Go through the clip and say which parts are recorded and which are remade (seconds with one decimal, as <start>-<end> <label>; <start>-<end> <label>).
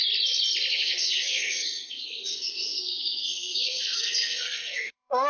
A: 0.0-0.7 recorded; 0.7-5.3 remade